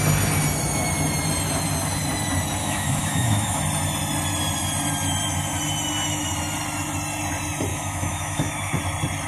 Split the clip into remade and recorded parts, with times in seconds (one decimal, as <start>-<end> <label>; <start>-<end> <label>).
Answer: 0.0-2.6 recorded; 2.6-3.6 remade; 3.6-7.7 recorded; 7.7-8.8 remade; 8.8-9.3 recorded